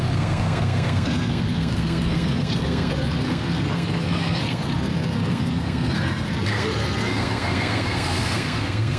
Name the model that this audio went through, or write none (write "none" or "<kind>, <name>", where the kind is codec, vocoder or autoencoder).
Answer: codec, SNAC